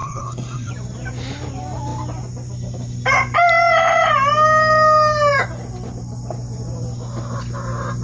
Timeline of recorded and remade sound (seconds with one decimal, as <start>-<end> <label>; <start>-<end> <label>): 0.0-0.7 remade; 0.7-8.0 recorded